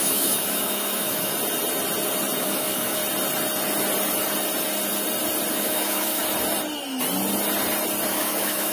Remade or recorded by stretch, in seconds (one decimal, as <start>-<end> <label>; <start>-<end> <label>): 0.0-1.3 remade; 1.3-2.4 recorded; 2.4-3.0 remade; 3.0-5.5 recorded; 5.5-6.2 remade; 6.2-8.1 recorded; 8.1-8.7 remade